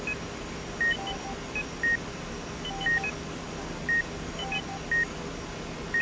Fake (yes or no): no